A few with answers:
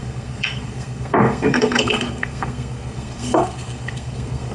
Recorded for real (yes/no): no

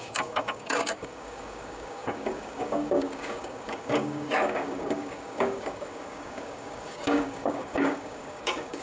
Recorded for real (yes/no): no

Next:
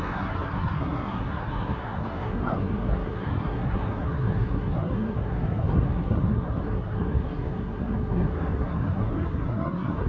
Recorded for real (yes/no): no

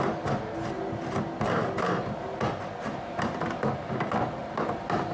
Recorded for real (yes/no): yes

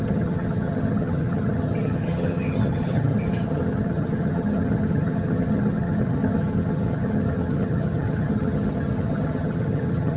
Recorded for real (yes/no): no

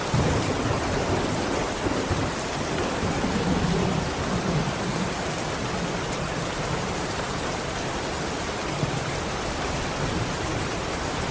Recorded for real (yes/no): yes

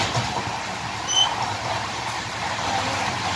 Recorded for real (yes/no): yes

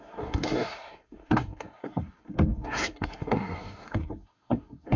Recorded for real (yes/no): no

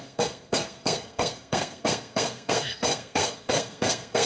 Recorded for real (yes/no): no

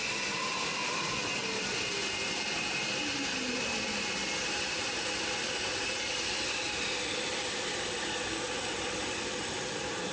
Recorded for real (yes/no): yes